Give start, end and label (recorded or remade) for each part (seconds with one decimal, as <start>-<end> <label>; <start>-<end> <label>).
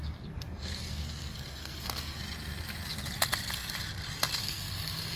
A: 0.0-2.2 remade; 2.2-4.4 recorded; 4.4-5.2 remade